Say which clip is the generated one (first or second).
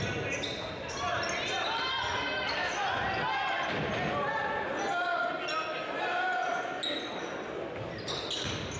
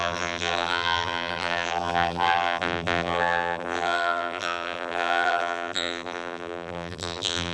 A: second